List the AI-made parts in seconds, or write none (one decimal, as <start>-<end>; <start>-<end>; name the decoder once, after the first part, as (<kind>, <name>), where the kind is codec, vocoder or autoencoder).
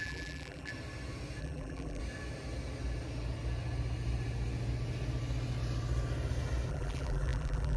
0.0-0.7 (vocoder, BigVGAN v2); 1.4-2.0; 6.7-7.8